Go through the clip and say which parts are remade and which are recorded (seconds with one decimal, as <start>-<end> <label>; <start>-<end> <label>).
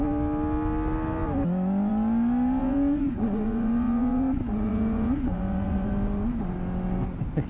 0.0-2.6 recorded; 2.6-5.9 remade; 5.9-7.5 recorded